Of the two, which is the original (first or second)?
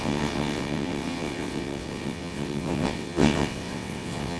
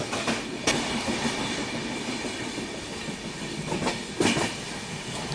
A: second